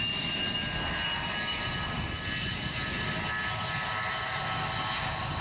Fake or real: real